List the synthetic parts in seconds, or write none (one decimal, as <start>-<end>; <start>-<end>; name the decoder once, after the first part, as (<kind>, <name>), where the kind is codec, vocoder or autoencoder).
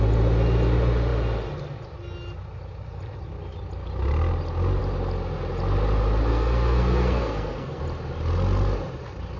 6.3-7.8 (codec, SNAC)